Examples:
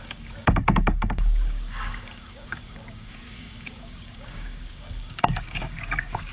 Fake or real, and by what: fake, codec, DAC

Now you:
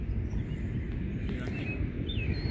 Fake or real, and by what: real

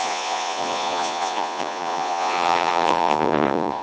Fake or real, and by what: fake, vocoder, Vocos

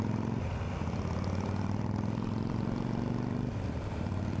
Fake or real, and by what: fake, vocoder, BigVGAN v2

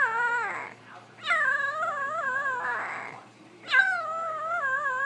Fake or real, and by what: fake, vocoder, BigVGAN v2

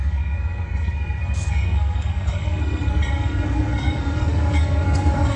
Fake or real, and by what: fake, codec, SNAC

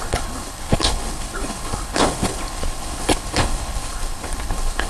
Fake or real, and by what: fake, codec, HILCodec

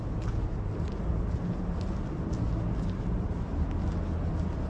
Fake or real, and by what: real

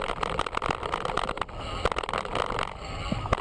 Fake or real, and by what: real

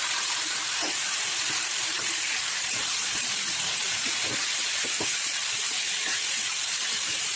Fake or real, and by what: fake, vocoder, BigVGAN v2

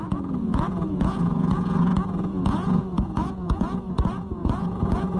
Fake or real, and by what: fake, vocoder, Vocos